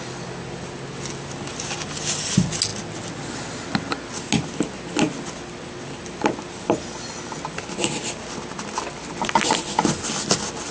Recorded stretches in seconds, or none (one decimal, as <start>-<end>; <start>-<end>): 0.0-10.7